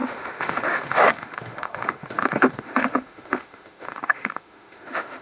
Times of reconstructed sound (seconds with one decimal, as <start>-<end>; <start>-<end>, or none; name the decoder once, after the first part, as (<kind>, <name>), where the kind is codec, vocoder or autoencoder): 0.0-5.2 (autoencoder, DAC-VAE)